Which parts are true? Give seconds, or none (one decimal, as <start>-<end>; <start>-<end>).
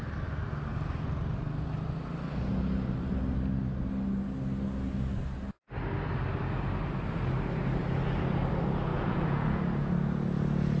0.0-8.9; 9.6-10.8